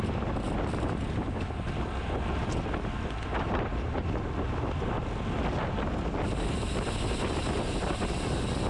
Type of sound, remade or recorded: recorded